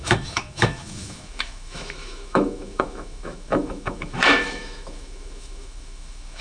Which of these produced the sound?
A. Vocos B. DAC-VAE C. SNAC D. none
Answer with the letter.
B